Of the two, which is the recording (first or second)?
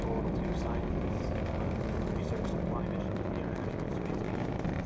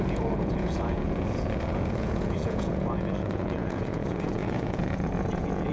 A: first